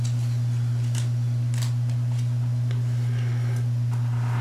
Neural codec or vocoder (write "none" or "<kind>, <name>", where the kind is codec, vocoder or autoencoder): none